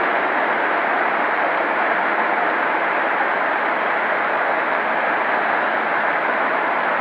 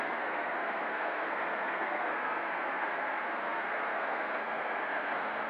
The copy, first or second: second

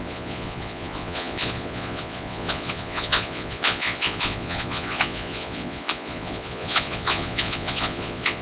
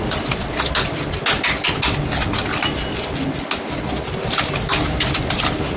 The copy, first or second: first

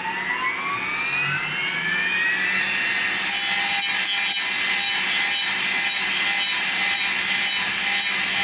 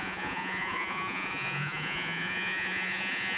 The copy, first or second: second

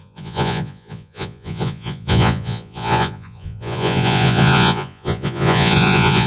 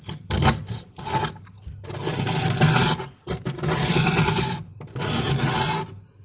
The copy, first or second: first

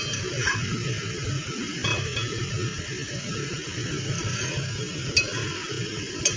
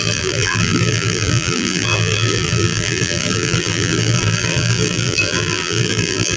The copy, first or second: second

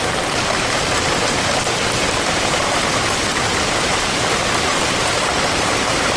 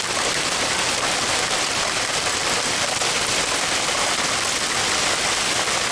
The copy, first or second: first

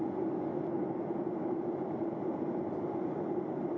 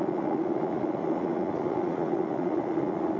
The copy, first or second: second